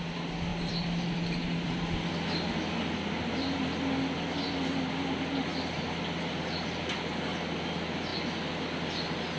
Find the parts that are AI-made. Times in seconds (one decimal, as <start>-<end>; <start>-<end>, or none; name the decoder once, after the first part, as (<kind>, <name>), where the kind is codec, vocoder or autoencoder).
0.5-2.1 (vocoder, BigVGAN v2)